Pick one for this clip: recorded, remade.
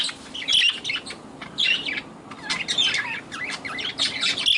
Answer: recorded